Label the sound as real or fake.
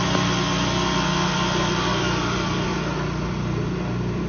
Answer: real